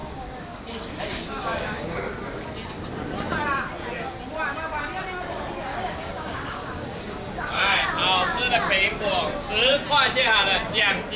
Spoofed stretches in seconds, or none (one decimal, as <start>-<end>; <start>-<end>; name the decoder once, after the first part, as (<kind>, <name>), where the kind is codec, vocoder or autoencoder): 0.0-2.1 (codec, DAC); 5.7-7.8